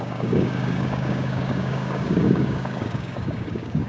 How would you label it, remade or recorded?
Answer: remade